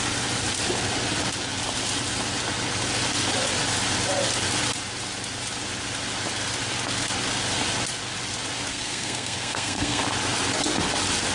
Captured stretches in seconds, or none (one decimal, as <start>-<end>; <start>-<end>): 0.0-8.7; 10.0-11.3